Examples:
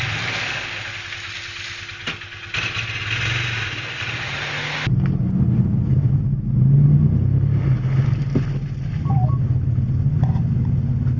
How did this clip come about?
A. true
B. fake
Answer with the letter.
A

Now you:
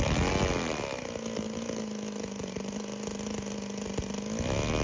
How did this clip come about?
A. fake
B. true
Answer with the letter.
B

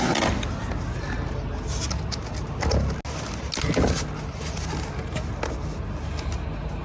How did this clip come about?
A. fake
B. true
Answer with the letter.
B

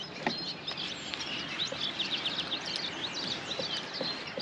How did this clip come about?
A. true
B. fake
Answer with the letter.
A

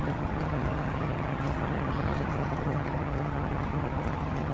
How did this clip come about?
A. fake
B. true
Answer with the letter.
A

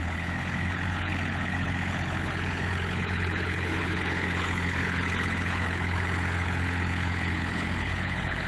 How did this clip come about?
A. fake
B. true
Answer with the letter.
A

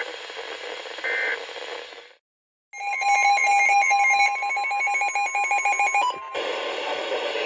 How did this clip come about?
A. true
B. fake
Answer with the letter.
A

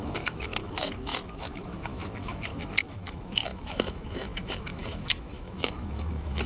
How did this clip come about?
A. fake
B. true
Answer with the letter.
A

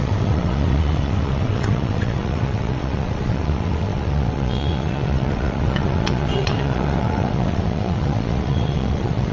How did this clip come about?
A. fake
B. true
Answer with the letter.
A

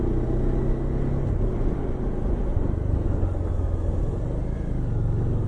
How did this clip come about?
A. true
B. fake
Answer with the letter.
A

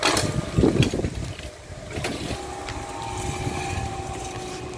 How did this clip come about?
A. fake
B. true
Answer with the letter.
B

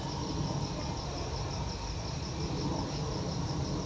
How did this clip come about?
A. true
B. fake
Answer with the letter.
A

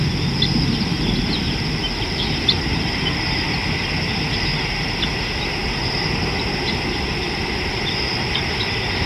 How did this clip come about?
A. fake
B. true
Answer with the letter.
B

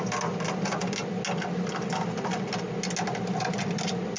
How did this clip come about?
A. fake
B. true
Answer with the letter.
B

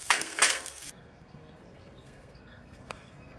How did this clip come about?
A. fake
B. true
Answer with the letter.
A